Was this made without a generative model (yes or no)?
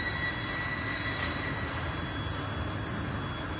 yes